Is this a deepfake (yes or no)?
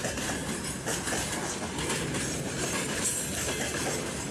no